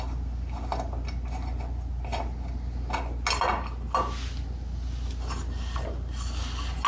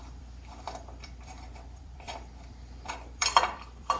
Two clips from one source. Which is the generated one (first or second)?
second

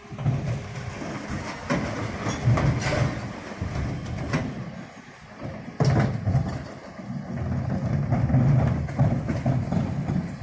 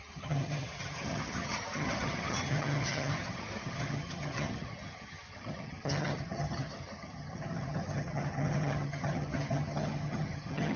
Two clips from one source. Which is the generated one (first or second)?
second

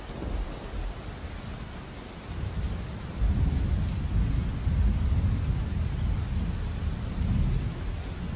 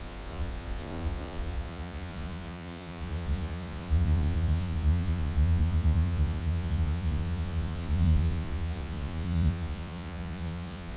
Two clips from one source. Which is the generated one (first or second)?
second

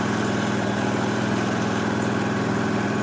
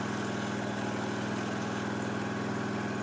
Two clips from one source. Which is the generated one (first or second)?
first